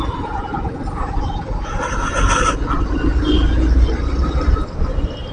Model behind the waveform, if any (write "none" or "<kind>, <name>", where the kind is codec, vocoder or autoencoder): none